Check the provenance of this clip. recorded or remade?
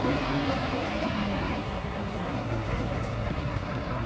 remade